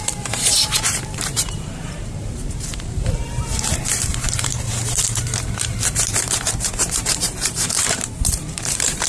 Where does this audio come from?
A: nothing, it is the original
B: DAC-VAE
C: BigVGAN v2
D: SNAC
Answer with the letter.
C